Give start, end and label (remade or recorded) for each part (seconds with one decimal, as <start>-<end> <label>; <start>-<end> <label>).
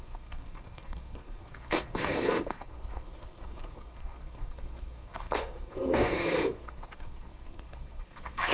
0.0-8.5 remade